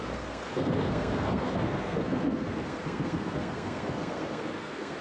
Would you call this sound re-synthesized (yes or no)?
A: yes